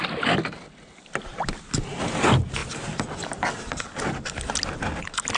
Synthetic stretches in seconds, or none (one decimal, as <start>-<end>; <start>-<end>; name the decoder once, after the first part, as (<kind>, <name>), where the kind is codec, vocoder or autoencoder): none